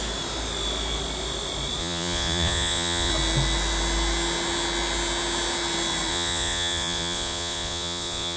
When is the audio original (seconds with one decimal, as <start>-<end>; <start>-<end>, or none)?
0.0-1.8; 3.1-6.1